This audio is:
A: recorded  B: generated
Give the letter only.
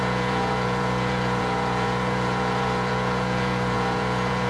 B